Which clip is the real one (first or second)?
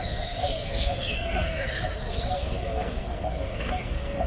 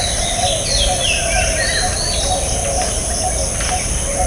second